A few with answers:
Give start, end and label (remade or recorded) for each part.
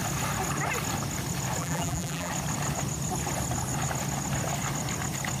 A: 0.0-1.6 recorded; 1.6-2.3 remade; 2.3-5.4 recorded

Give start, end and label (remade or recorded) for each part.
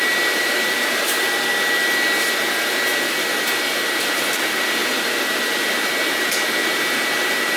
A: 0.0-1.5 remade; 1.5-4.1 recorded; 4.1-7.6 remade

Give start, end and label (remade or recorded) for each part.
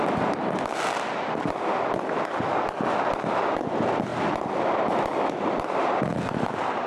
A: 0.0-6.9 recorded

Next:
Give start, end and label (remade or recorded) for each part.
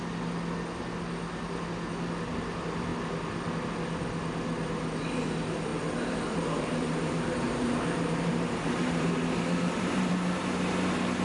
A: 0.0-5.7 recorded; 5.7-10.1 remade; 10.1-11.2 recorded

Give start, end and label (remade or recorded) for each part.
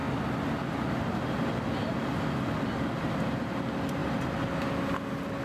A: 0.0-5.4 recorded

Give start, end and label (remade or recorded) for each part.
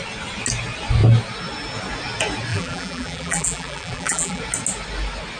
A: 0.0-2.5 recorded; 2.5-4.4 remade; 4.4-5.4 recorded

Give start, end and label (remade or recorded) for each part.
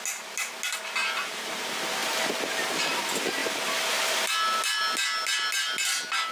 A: 0.0-1.0 recorded; 1.0-1.6 remade; 1.6-6.3 recorded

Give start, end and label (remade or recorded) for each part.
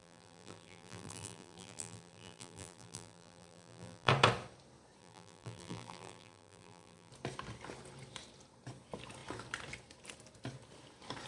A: 0.0-4.1 remade; 4.1-5.0 recorded; 5.0-7.1 remade; 7.1-11.3 recorded